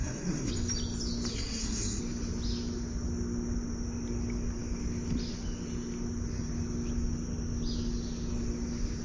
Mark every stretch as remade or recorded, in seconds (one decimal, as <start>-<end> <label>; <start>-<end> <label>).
0.0-0.5 remade; 0.5-1.3 recorded; 1.3-2.0 remade; 2.0-9.0 recorded